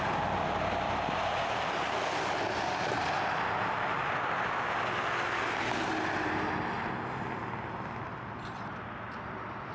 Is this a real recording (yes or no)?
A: yes